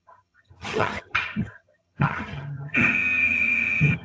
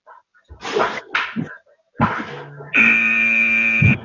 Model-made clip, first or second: first